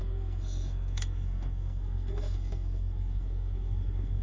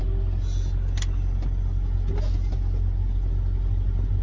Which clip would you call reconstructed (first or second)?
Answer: first